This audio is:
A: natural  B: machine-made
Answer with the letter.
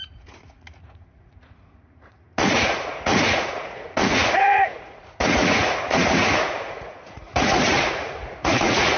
B